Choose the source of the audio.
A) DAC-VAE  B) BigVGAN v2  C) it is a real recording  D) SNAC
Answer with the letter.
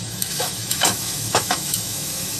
A